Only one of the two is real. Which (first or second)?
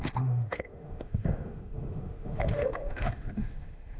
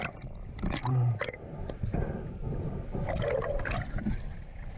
second